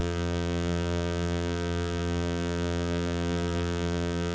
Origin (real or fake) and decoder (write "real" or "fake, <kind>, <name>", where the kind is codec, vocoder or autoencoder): fake, vocoder, BigVGAN v2